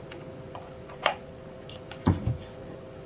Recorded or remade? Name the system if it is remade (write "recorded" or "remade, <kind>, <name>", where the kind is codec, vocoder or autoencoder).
remade, vocoder, Vocos